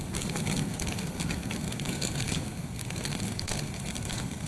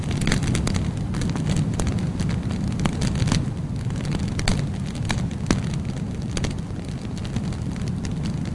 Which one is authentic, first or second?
second